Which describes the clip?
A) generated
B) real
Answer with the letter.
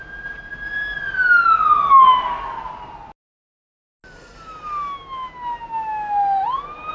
B